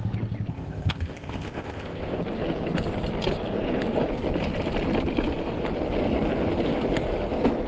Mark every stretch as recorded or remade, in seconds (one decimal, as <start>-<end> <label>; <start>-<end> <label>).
0.0-0.5 recorded; 0.5-2.2 remade; 2.2-7.7 recorded